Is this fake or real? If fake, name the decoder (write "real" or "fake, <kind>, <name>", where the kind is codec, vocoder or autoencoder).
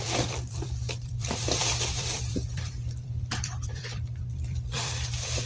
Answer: fake, vocoder, BigVGAN v2